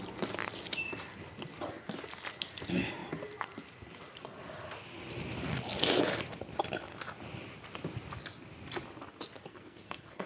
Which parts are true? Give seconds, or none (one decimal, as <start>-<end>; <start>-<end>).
0.0-9.5